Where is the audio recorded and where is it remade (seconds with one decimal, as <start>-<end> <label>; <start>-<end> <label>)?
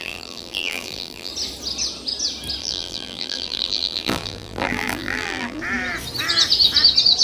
0.0-1.3 remade; 1.3-2.6 recorded; 2.6-5.6 remade; 5.6-7.2 recorded